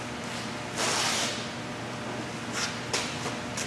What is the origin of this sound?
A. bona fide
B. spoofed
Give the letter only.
A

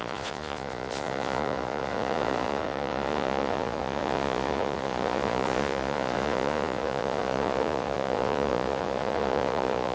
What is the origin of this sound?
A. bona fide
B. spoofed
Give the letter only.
B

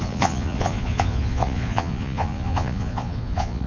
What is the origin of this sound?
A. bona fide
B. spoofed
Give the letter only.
B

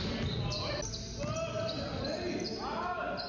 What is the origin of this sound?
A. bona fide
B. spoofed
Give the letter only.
A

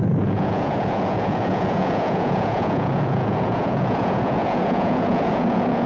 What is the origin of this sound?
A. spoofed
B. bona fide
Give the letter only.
A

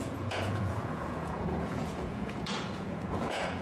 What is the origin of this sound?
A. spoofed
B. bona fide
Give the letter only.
A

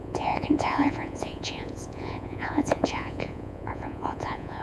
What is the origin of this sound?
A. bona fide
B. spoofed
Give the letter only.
B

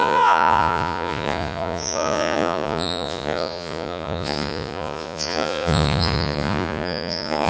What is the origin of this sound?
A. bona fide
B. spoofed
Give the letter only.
B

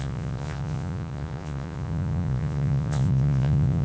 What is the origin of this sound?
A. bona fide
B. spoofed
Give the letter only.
B